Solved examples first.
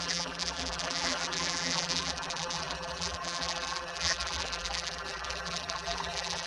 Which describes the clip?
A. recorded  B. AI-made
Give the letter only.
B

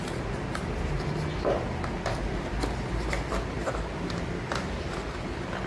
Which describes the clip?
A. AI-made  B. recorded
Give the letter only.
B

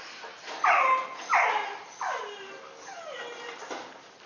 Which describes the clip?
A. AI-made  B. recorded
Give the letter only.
B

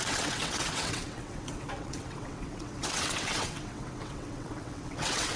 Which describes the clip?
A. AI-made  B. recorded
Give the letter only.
A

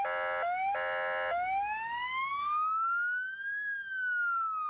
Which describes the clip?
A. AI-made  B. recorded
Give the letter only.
B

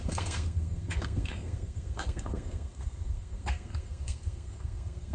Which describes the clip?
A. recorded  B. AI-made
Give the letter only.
B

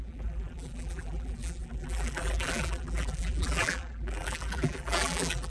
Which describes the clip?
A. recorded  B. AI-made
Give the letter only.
B